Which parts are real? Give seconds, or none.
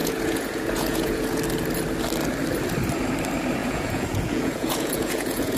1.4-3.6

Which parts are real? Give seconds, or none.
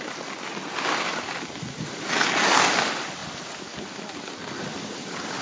0.0-5.4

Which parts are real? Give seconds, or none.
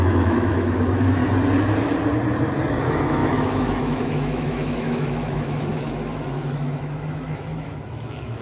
1.2-2.8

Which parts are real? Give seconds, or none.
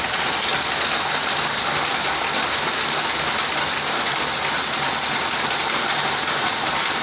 0.0-7.0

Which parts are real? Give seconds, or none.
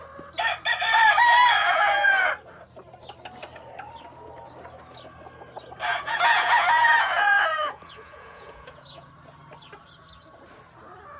0.0-1.6; 2.3-5.9; 9.1-11.2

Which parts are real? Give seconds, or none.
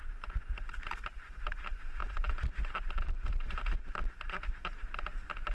none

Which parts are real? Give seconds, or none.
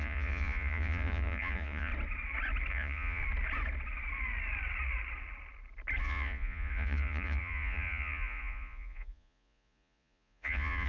1.9-2.7; 3.2-6.0